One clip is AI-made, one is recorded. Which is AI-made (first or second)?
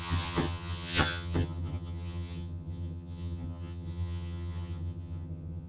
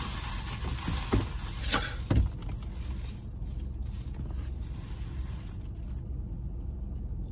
first